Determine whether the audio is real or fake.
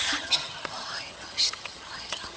fake